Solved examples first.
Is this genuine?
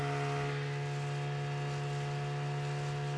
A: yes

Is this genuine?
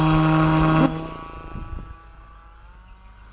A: yes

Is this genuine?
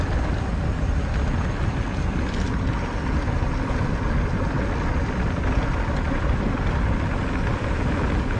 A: yes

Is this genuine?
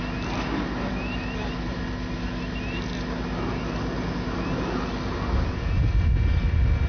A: yes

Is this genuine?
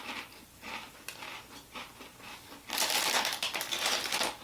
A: yes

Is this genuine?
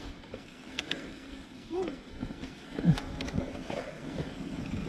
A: no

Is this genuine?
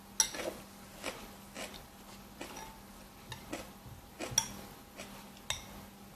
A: yes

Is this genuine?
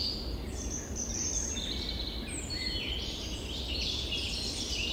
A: yes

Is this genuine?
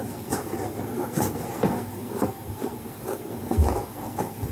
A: no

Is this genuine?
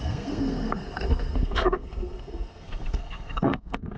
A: no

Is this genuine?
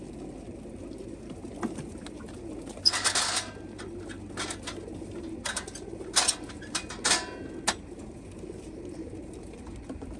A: yes